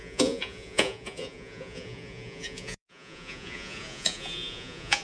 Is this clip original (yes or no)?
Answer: no